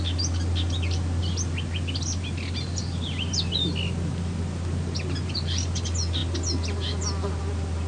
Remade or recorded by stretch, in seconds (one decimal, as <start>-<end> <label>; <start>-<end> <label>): 0.0-7.9 recorded